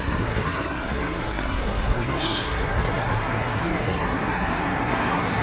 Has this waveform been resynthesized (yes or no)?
yes